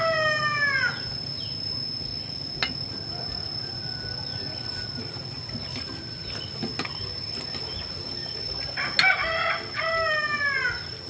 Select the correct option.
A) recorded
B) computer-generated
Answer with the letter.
A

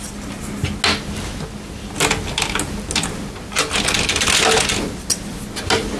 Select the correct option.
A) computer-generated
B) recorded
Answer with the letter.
B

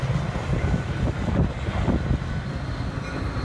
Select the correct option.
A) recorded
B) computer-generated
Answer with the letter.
A